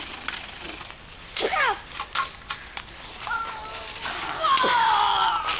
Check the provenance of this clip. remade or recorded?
recorded